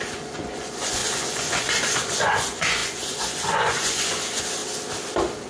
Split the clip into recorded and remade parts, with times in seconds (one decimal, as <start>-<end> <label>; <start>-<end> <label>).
0.0-4.6 remade; 4.6-5.5 recorded